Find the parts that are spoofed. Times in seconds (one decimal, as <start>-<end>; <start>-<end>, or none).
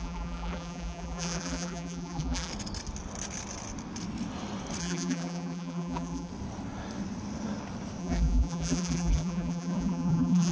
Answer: 0.0-2.5; 4.8-6.3; 8.0-10.5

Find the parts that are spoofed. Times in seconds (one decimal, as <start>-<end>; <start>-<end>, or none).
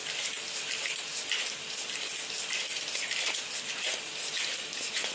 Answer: 0.0-1.0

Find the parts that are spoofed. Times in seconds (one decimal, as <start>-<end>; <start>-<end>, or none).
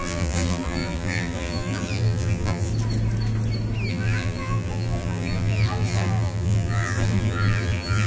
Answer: 0.0-2.7; 3.9-8.1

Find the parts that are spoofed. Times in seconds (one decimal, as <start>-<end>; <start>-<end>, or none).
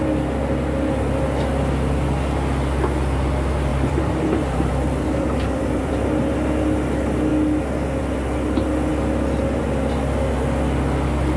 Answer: 3.7-5.9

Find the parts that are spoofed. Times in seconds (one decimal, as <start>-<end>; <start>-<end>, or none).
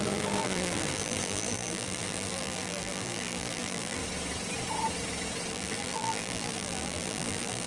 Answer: 0.0-4.0; 5.5-7.7